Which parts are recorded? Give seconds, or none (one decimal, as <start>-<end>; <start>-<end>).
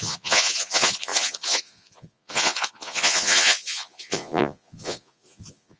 none